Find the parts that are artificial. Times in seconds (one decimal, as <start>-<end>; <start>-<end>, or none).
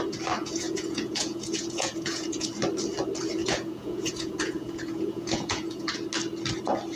0.4-2.5; 3.4-5.9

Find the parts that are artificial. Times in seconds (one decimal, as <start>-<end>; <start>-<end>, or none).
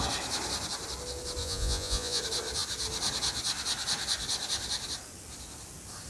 1.4-2.2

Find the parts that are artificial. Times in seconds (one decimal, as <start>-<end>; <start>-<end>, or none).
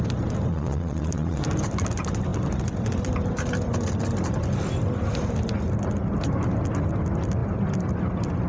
0.5-1.4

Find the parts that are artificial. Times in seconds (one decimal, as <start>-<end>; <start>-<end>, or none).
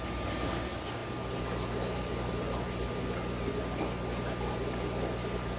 none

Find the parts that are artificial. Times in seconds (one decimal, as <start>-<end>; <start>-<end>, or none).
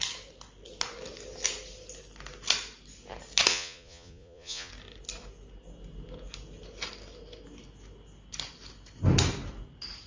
3.5-4.7